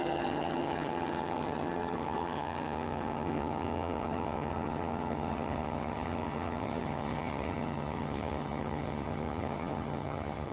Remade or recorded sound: remade